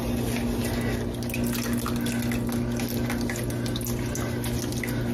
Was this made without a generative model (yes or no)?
yes